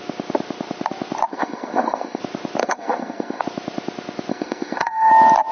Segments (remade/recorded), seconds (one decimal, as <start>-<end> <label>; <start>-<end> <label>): 0.0-1.3 recorded; 1.3-2.2 remade; 2.2-2.6 recorded; 2.6-3.4 remade; 3.4-4.3 recorded; 4.3-5.1 remade; 5.1-5.5 recorded